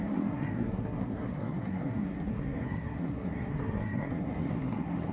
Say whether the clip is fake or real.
fake